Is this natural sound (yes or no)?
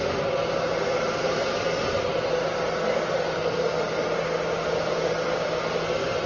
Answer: yes